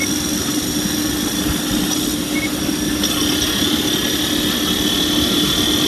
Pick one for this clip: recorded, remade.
recorded